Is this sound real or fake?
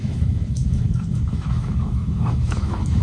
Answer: fake